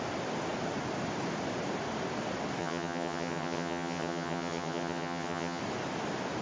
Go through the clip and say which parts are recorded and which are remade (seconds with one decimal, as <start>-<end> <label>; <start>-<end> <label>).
0.0-2.6 recorded; 2.6-5.6 remade; 5.6-6.4 recorded